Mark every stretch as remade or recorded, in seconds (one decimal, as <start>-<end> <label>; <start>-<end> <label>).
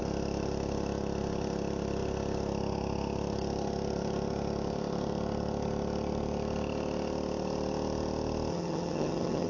0.0-8.5 recorded; 8.5-9.5 remade